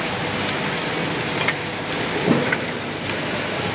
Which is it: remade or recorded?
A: recorded